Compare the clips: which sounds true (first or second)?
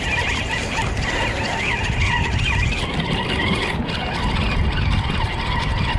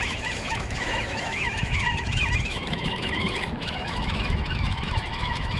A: first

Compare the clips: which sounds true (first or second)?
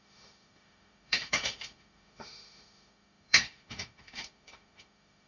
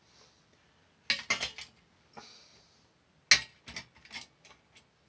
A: second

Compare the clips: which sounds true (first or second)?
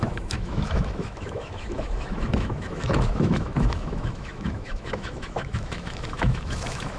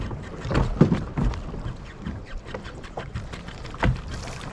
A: second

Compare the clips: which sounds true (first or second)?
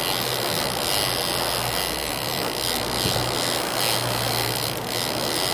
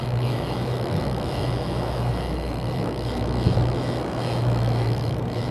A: first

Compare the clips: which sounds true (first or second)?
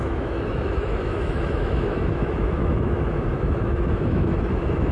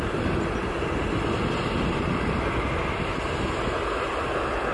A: second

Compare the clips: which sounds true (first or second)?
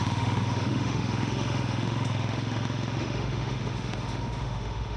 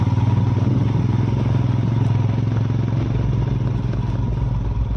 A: second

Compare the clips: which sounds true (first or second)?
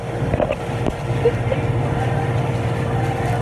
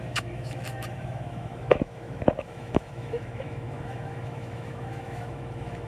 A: first